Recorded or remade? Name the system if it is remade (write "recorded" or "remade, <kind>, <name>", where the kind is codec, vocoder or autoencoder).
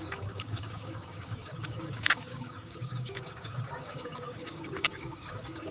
remade, codec, DAC